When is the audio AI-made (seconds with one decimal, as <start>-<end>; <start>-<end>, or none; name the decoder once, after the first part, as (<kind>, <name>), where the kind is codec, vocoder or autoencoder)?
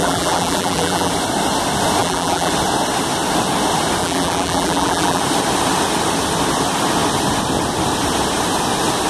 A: 0.0-1.1 (vocoder, BigVGAN v2); 2.0-2.5; 4.0-5.2